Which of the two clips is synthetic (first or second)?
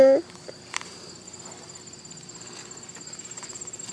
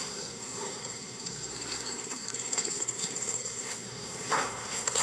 second